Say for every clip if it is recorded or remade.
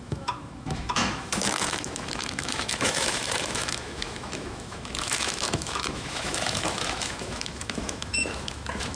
remade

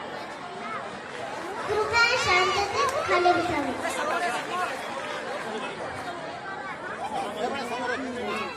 recorded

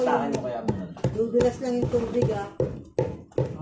recorded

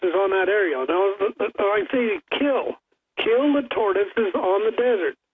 recorded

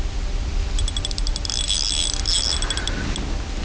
recorded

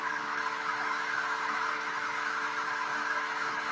remade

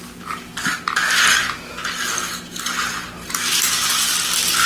recorded